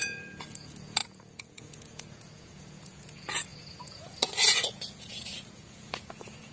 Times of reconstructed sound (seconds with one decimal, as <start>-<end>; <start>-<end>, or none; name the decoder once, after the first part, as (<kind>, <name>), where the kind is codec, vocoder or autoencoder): 0.0-6.5 (vocoder, Vocos)